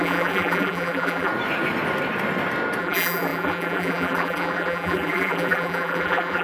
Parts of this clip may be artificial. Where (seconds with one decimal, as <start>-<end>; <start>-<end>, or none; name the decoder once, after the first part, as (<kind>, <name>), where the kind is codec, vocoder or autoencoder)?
0.0-1.3 (vocoder, BigVGAN v2); 2.8-6.4